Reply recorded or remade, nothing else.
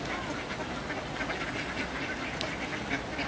recorded